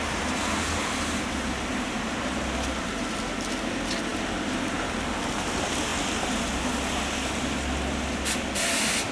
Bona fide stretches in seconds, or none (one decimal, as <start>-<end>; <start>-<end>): 0.0-9.1